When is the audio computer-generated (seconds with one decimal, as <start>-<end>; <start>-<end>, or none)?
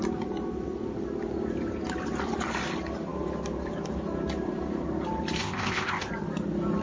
5.4-6.1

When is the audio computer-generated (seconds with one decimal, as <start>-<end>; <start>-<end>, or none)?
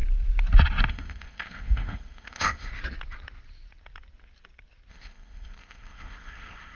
0.9-2.7; 4.9-6.7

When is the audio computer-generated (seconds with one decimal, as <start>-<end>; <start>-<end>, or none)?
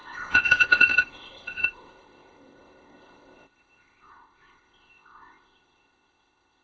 0.0-6.6